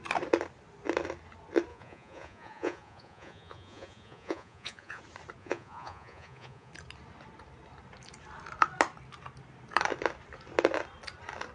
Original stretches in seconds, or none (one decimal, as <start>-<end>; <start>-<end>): 0.0-1.7; 5.0-5.4; 6.7-11.5